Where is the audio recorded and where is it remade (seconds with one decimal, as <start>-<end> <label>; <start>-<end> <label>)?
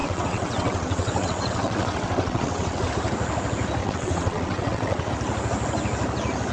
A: 0.0-2.9 remade; 2.9-3.8 recorded; 3.8-5.1 remade; 5.1-6.5 recorded